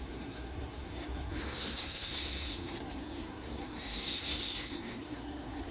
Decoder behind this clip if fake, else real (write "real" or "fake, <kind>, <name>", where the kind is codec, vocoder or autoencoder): fake, codec, SNAC